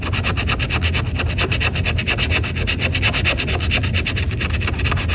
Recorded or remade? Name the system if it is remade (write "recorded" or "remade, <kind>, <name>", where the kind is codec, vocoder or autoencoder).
recorded